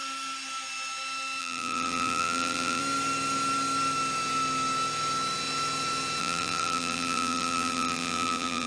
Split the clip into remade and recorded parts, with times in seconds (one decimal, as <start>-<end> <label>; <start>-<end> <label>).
0.0-1.4 recorded; 1.4-2.8 remade; 2.8-6.2 recorded; 6.2-8.7 remade